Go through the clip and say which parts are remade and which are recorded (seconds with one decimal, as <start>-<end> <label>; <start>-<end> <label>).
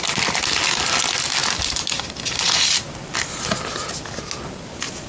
0.0-1.4 recorded; 1.4-2.2 remade; 2.2-5.1 recorded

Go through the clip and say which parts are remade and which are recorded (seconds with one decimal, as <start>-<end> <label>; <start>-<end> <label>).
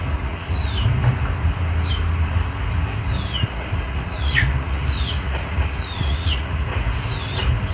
0.0-0.6 remade; 0.6-3.3 recorded; 3.3-6.7 remade; 6.7-7.7 recorded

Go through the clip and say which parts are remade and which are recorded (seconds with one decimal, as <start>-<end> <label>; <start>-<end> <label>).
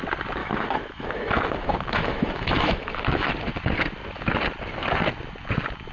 0.0-0.4 recorded; 0.4-3.3 remade; 3.3-5.9 recorded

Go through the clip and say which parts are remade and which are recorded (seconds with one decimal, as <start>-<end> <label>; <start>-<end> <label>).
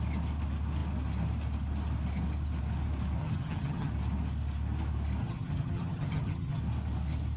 0.0-3.2 recorded; 3.2-3.9 remade; 3.9-5.2 recorded; 5.2-6.6 remade; 6.6-7.4 recorded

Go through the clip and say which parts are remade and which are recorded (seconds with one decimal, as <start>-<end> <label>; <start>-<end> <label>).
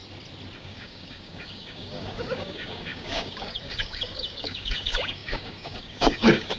0.0-0.6 recorded; 0.6-6.6 remade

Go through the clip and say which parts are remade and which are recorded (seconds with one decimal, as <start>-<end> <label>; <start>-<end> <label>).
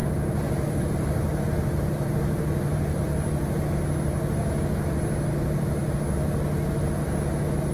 0.0-2.8 remade; 2.8-7.7 recorded